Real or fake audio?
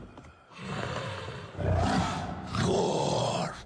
fake